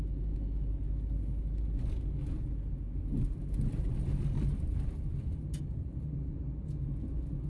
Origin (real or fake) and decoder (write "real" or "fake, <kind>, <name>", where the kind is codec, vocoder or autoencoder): real